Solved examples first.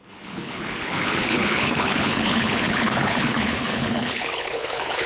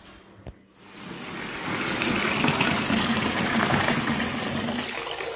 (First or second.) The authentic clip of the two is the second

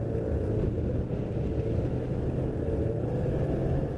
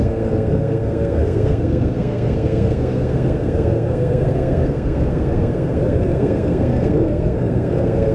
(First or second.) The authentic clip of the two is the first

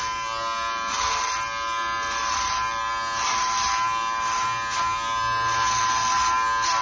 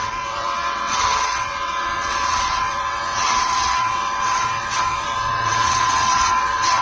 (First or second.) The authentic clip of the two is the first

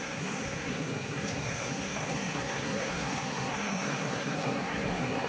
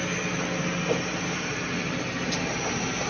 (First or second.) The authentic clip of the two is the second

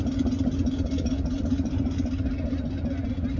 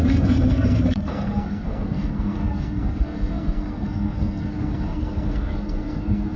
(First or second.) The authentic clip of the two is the first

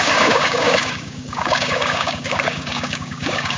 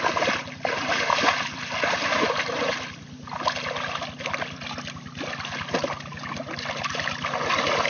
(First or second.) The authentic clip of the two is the second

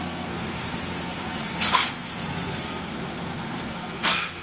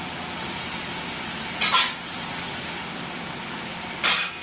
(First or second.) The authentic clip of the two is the second